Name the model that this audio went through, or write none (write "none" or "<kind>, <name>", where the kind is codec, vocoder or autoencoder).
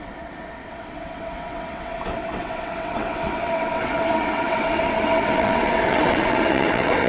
vocoder, WaveNeXt